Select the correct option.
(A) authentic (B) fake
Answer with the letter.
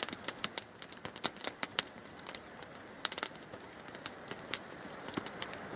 A